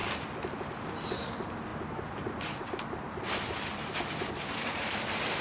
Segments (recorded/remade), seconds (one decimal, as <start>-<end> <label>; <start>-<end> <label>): 0.0-5.4 recorded